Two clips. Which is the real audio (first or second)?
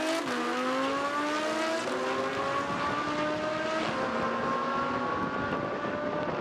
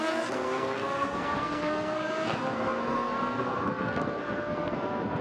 first